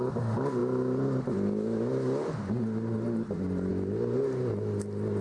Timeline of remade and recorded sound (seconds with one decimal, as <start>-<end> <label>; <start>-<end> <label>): 0.0-5.2 recorded